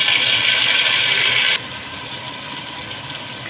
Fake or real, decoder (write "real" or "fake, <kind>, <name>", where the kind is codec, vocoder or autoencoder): real